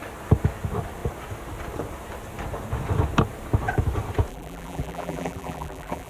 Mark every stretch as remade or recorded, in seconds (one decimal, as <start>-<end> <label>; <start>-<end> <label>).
0.0-4.3 recorded; 4.3-6.1 remade